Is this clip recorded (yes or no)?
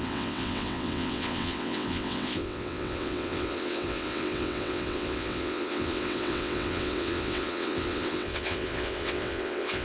no